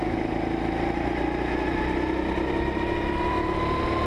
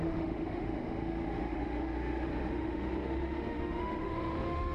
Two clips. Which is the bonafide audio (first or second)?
first